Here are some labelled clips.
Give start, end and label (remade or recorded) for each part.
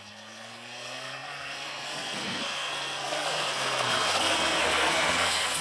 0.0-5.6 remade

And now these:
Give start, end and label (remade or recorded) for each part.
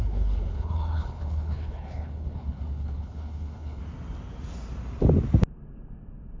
0.0-3.8 remade; 3.8-6.4 recorded